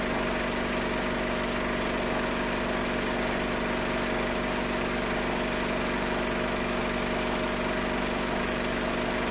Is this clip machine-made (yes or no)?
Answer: no